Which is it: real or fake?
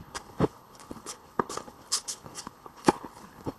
fake